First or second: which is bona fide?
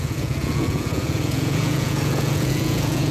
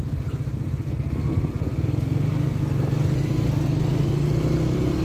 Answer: second